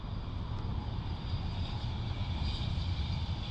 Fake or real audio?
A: real